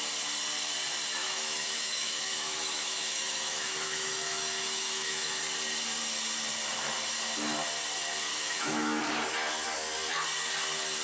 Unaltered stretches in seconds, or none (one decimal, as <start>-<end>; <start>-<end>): 0.0-1.2; 5.4-8.3; 9.0-11.0